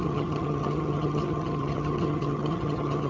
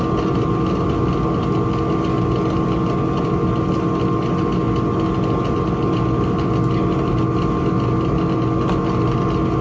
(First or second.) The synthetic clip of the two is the first